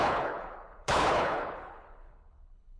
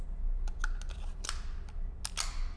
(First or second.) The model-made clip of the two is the first